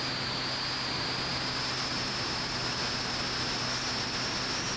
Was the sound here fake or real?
real